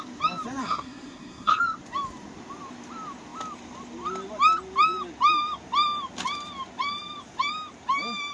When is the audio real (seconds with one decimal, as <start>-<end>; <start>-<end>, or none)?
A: 0.0-0.6; 1.6-8.3